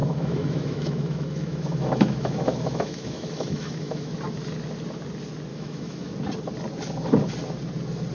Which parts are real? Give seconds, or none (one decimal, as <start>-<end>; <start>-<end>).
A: 4.1-5.5; 6.1-8.1